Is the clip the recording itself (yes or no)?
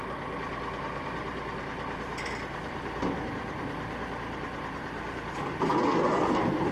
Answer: yes